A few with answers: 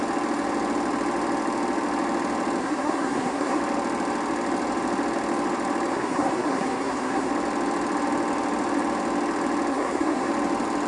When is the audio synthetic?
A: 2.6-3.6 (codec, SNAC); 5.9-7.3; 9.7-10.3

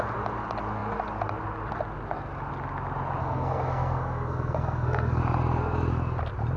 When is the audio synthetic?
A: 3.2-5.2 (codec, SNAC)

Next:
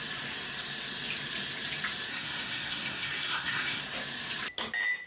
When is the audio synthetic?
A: 2.1-3.8 (codec, SNAC)